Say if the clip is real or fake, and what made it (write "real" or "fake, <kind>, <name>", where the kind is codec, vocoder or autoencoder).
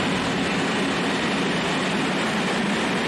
real